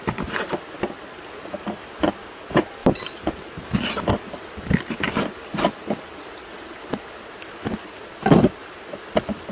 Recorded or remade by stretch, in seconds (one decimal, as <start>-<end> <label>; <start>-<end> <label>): 0.0-9.5 recorded